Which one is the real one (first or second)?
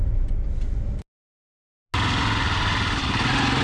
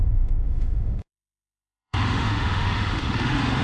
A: first